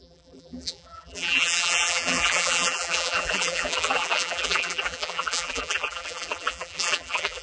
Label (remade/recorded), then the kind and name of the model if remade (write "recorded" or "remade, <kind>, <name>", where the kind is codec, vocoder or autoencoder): remade, vocoder, BigVGAN v2